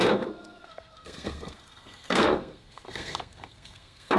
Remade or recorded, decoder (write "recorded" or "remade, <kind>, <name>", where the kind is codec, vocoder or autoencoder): remade, codec, SNAC